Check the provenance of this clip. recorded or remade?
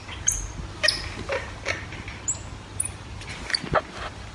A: recorded